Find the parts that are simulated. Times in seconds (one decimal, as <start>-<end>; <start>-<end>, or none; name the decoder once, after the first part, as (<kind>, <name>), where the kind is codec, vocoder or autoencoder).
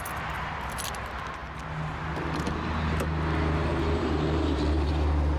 3.7-4.9 (vocoder, BigVGAN v2)